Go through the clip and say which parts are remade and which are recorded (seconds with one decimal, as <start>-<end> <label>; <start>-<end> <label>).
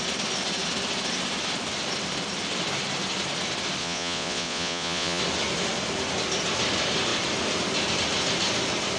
0.0-3.8 recorded; 3.8-5.2 remade; 5.2-9.0 recorded